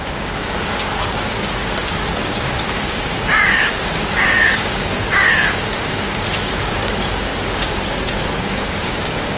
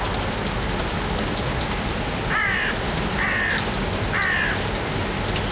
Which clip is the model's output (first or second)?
first